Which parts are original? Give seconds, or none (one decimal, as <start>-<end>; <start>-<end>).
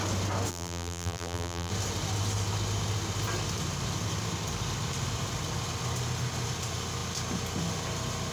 0.0-0.5; 1.7-8.3